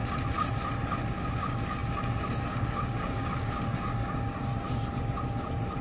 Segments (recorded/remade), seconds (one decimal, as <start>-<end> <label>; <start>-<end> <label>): 0.0-1.3 recorded; 1.3-4.5 remade; 4.5-5.8 recorded